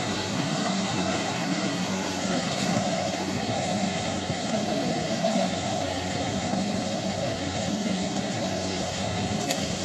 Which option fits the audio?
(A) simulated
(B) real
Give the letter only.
A